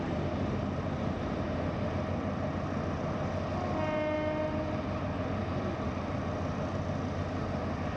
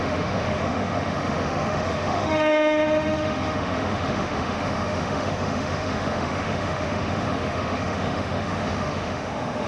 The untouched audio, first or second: first